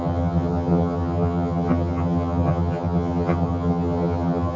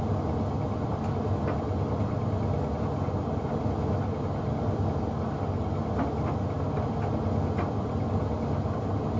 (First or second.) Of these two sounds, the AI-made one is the first